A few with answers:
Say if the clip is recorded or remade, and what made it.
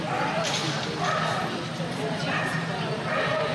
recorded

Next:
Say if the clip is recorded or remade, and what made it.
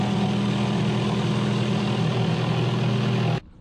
recorded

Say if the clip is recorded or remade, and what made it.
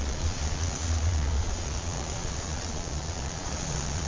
remade, vocoder, Vocos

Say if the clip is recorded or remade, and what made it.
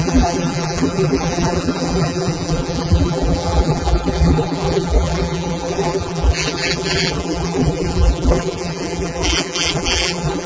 remade, vocoder, BigVGAN v2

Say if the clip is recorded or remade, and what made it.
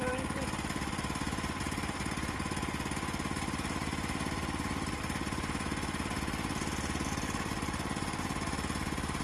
recorded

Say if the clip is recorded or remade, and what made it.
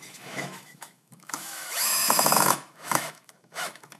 remade, autoencoder, DAC-VAE